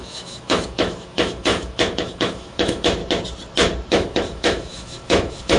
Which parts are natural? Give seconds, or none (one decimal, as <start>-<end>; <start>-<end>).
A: 3.0-3.9